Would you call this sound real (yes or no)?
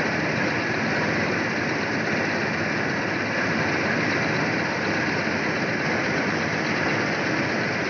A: yes